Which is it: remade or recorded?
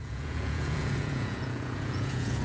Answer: remade